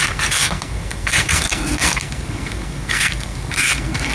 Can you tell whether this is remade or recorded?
remade